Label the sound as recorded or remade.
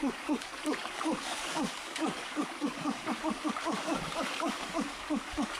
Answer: remade